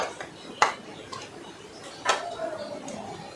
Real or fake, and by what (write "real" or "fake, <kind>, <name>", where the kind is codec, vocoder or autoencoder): real